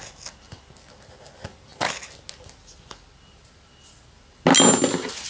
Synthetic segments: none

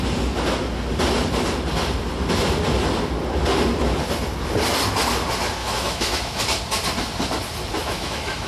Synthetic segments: 5.6-6.4 (autoencoder, DAC-VAE); 7.8-8.5